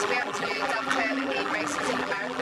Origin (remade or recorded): remade